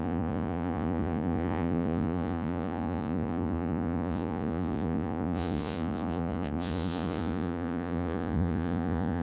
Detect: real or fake fake